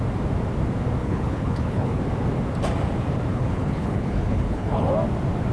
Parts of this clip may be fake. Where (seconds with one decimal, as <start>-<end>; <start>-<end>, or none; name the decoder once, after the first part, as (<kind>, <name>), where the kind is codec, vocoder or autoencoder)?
1.0-2.0 (codec, HILCodec); 3.3-4.9